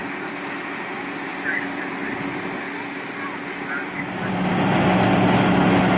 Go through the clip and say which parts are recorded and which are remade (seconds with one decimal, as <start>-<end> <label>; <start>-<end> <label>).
0.0-6.0 recorded